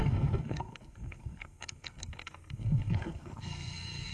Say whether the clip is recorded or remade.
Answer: remade